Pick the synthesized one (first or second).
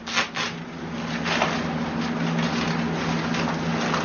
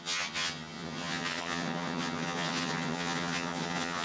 second